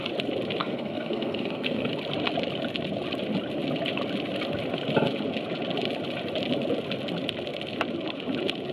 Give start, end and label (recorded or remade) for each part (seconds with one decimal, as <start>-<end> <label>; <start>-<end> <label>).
0.0-0.6 recorded; 0.6-1.9 remade; 1.9-8.7 recorded